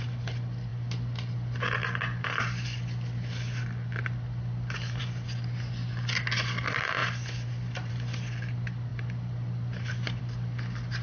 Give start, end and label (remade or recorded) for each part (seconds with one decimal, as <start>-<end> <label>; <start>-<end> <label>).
0.0-11.0 recorded